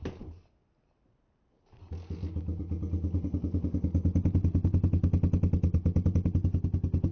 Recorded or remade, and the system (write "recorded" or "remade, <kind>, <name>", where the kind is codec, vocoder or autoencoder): recorded